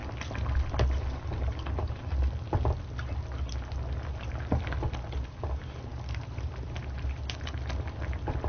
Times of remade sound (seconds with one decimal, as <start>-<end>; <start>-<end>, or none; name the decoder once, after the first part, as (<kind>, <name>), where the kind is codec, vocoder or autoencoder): 5.9-6.8 (vocoder, BigVGAN v2)

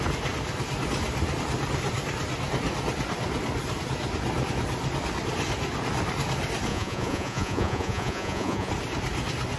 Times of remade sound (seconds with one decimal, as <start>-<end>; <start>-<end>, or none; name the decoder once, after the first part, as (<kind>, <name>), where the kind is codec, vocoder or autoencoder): 6.7-8.7 (vocoder, Vocos)

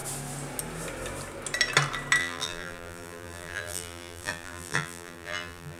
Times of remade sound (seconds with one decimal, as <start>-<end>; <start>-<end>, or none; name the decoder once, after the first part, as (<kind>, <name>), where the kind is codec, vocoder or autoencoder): 2.2-5.8 (vocoder, BigVGAN v2)

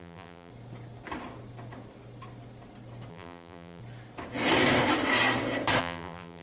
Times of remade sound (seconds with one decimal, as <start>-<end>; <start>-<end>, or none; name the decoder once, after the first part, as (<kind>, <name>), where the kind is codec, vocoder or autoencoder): 0.0-0.5 (vocoder, BigVGAN v2); 3.1-3.8; 5.8-6.4

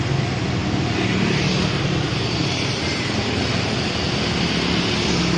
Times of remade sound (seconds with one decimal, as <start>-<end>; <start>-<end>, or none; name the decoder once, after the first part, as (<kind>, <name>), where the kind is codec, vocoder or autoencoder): 2.1-3.4 (vocoder, BigVGAN v2)